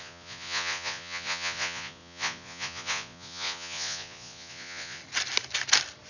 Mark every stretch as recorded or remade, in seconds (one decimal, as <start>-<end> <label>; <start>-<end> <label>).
0.0-5.0 remade; 5.0-6.1 recorded